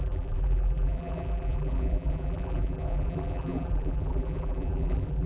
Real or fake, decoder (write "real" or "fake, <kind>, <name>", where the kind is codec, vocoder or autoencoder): fake, vocoder, BigVGAN v2